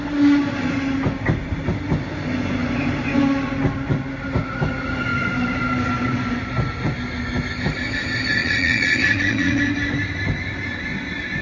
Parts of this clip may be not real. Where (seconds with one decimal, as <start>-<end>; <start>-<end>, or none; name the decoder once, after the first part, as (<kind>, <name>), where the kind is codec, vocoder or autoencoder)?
8.4-9.6 (vocoder, Vocos)